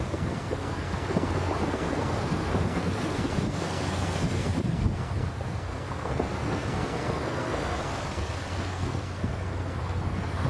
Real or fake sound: fake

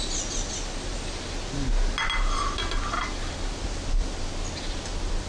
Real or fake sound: real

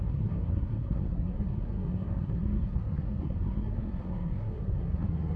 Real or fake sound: fake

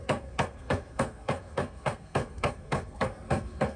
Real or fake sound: fake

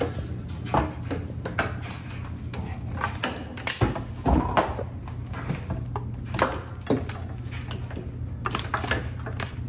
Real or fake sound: real